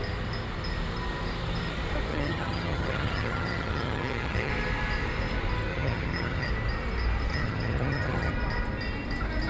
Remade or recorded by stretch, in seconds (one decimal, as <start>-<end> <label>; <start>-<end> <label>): 0.0-2.1 recorded; 2.1-4.5 remade; 4.5-5.7 recorded; 5.7-6.5 remade; 6.5-7.3 recorded; 7.3-8.3 remade; 8.3-9.5 recorded